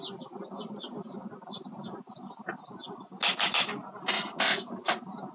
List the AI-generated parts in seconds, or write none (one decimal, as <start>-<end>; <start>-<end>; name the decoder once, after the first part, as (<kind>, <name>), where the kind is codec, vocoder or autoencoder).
none